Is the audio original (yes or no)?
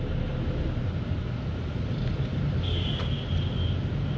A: yes